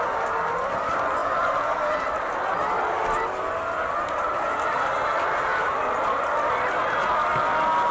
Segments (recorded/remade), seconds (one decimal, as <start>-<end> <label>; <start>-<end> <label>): 0.0-1.2 recorded; 1.2-2.5 remade; 2.5-5.1 recorded; 5.1-6.3 remade; 6.3-7.9 recorded